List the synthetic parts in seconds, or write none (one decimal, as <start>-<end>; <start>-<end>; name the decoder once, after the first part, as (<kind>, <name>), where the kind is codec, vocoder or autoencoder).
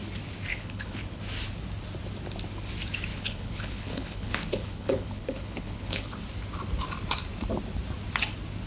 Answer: 0.5-1.2 (codec, HILCodec); 3.1-6.2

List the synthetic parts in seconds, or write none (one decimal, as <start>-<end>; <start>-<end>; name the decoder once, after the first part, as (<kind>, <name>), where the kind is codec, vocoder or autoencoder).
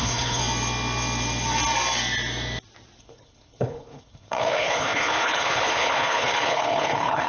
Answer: 0.0-0.4 (codec, HILCodec); 3.0-7.3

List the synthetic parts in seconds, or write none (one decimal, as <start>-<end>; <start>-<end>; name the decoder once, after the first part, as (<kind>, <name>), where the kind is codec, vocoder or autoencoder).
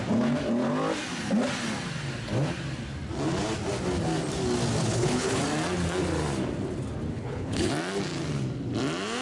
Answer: 4.8-5.4 (codec, HILCodec); 7.1-7.7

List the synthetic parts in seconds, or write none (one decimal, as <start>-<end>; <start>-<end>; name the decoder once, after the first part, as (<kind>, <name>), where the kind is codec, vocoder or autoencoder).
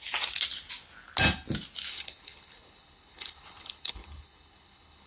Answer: 1.9-5.1 (codec, HILCodec)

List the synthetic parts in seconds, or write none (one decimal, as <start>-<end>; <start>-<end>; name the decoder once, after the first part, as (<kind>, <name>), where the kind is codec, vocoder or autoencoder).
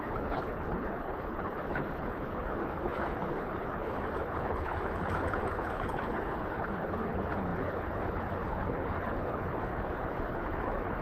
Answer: 0.0-11.0 (codec, HILCodec)